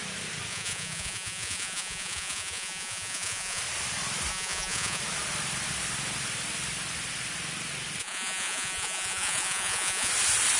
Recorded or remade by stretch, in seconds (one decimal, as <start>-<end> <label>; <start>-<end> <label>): 0.0-0.5 recorded; 0.5-3.6 remade; 3.6-4.3 recorded; 4.3-5.0 remade; 5.0-8.0 recorded; 8.0-10.1 remade; 10.1-10.6 recorded